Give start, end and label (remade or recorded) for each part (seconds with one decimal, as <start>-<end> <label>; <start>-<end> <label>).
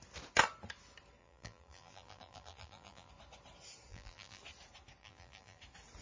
0.0-1.2 recorded; 1.2-3.1 remade; 3.1-3.9 recorded; 3.9-4.4 remade; 4.4-5.0 recorded; 5.0-5.6 remade; 5.6-6.0 recorded